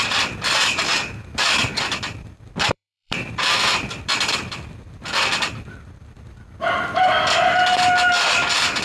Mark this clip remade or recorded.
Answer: remade